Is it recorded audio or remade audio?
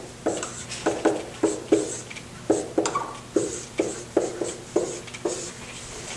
recorded